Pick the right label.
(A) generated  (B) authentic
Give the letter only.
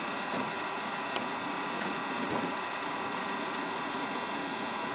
A